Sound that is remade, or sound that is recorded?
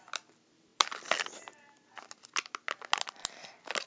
recorded